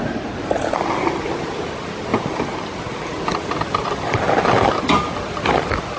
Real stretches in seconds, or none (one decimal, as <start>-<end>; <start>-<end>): 0.0-6.0